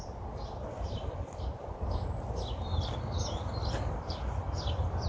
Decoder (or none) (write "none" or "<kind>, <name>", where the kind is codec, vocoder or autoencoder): none